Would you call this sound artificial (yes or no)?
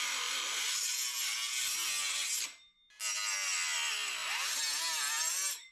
no